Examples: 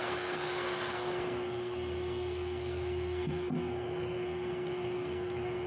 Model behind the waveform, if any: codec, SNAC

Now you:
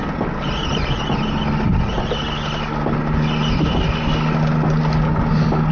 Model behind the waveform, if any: none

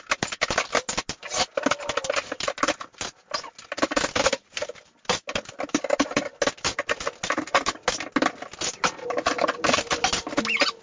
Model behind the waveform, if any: none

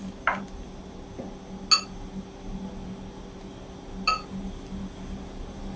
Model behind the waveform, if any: none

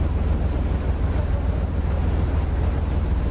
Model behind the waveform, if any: vocoder, BigVGAN v2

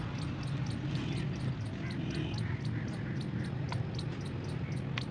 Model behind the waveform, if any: none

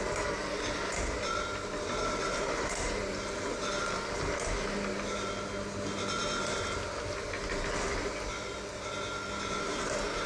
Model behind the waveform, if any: none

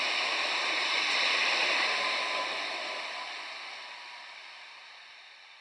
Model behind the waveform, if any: vocoder, BigVGAN v2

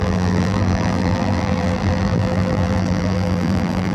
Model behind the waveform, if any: vocoder, BigVGAN v2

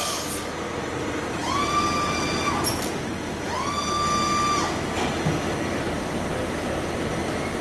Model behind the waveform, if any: none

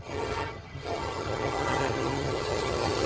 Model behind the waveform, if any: vocoder, HiFi-GAN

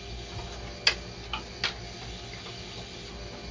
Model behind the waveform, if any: none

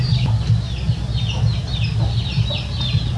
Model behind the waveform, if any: none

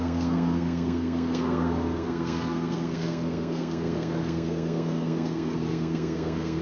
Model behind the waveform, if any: codec, SNAC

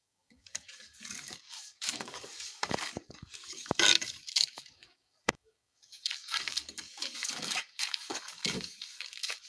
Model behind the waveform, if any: codec, DAC